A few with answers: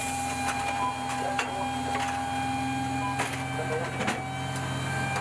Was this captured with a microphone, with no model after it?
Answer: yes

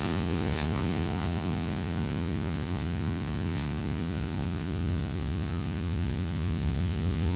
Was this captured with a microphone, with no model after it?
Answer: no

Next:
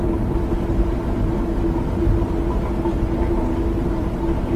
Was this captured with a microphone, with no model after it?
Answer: yes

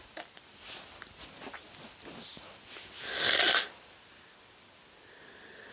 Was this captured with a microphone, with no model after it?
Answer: yes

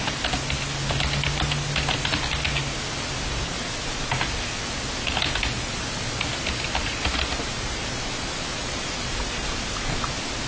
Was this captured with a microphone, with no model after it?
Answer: yes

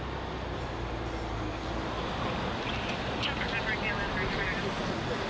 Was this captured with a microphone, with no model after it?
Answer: yes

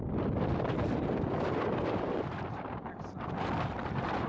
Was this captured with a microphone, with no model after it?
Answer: yes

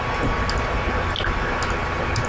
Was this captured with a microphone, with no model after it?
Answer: yes